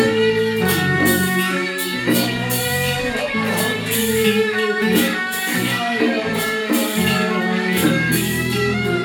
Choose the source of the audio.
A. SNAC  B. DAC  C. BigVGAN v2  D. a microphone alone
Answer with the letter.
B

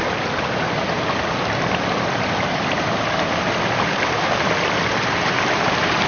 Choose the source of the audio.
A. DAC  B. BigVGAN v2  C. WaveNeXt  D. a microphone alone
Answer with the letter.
D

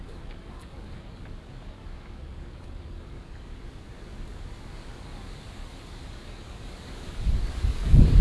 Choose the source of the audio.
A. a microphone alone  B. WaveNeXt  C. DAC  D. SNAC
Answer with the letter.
C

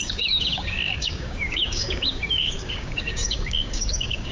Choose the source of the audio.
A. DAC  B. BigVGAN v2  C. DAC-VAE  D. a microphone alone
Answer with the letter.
A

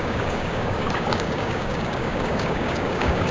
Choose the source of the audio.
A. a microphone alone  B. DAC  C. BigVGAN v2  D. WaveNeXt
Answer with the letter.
B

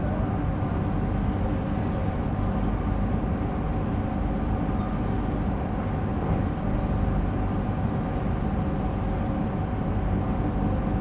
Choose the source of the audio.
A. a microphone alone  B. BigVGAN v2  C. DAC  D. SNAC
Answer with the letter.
A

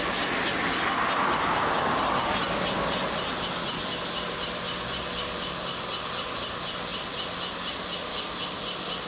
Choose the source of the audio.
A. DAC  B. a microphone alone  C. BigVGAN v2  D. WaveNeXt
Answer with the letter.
B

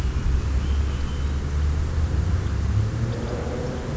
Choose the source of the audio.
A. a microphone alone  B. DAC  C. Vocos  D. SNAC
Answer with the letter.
A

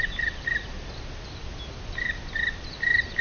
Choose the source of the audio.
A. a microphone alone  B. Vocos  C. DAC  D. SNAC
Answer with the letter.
A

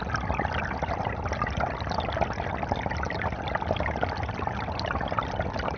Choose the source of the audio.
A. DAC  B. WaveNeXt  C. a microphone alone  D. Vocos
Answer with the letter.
C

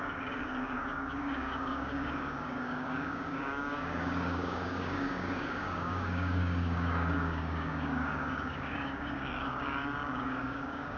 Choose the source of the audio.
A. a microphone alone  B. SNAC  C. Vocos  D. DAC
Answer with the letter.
D